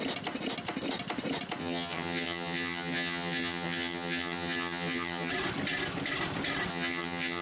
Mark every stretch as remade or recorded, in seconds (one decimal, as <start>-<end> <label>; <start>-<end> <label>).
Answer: 0.0-1.6 recorded; 1.6-5.3 remade; 5.3-6.7 recorded; 6.7-7.4 remade